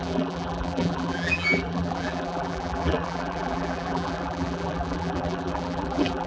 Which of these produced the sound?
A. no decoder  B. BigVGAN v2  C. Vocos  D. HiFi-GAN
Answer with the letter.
B